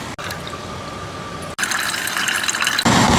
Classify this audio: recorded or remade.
recorded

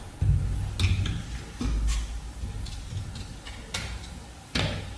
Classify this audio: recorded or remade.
recorded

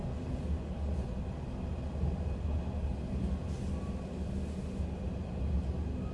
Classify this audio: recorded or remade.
recorded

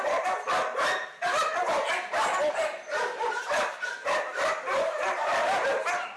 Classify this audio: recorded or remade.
recorded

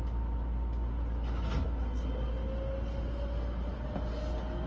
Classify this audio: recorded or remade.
recorded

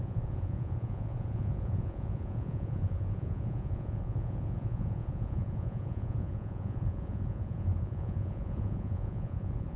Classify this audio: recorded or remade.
remade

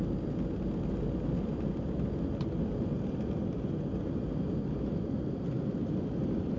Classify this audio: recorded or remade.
recorded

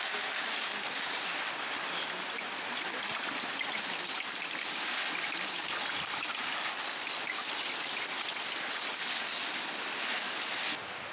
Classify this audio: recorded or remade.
recorded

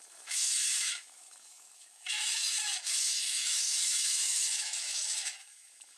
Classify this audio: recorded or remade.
remade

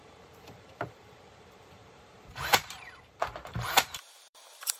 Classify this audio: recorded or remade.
remade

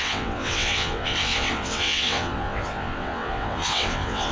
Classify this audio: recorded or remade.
remade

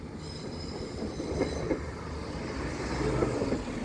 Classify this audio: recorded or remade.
recorded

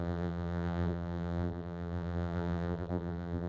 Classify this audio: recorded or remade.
remade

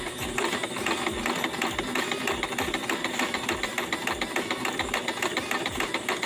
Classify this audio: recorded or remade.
recorded